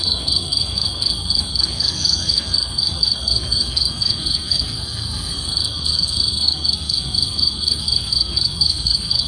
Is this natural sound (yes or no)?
no